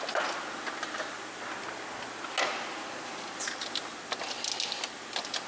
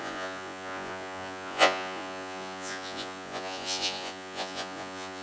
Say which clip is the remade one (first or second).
second